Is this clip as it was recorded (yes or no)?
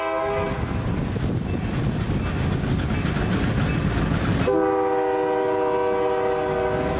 yes